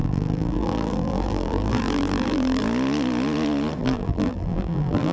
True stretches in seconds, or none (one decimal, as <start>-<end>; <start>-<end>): 2.6-3.8